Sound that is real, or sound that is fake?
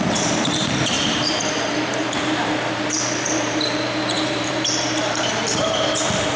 fake